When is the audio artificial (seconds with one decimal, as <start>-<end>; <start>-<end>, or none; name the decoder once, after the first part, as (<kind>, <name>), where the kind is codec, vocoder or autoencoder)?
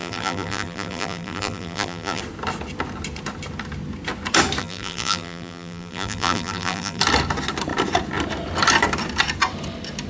0.0-2.2 (vocoder, BigVGAN v2); 4.6-7.0